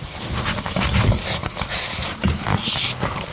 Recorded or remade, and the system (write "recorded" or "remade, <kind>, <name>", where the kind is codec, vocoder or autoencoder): recorded